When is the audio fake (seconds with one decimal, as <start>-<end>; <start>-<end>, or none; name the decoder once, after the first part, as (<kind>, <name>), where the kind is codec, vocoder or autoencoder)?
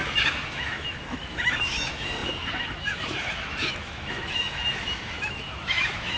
0.0-6.2 (autoencoder, DAC-VAE)